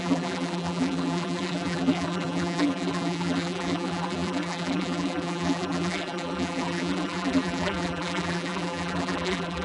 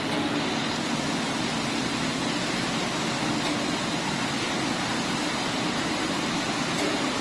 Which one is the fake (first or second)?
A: first